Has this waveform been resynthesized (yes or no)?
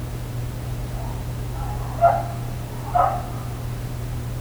no